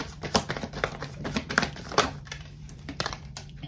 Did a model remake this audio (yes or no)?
yes